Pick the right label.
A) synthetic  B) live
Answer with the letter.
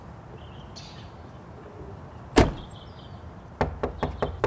B